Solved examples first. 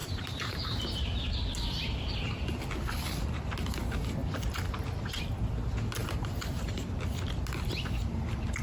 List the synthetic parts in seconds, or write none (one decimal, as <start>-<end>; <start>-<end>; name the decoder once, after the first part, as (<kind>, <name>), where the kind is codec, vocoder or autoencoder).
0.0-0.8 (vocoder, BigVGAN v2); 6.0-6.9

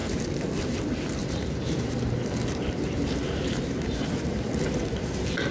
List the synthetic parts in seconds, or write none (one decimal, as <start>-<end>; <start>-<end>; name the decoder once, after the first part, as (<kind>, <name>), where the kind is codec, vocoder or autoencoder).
1.2-4.5 (vocoder, BigVGAN v2)

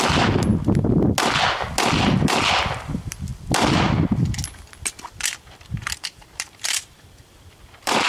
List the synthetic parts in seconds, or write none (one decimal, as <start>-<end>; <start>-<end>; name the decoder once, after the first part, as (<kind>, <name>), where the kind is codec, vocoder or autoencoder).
0.0-0.5 (vocoder, BigVGAN v2); 2.2-3.3; 5.7-8.1

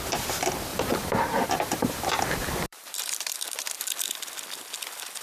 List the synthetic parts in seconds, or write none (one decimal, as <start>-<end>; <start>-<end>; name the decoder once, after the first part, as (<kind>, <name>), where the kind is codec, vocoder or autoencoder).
0.7-3.8 (vocoder, BigVGAN v2)